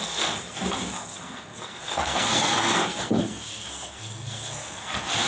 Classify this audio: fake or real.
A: fake